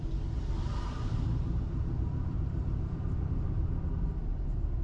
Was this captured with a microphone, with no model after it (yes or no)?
yes